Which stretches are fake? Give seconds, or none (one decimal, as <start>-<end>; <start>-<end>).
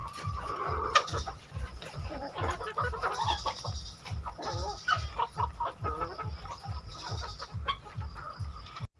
0.0-2.6